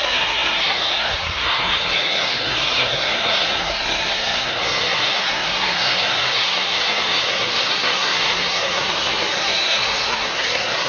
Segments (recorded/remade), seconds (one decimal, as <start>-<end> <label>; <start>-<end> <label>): 0.0-10.9 remade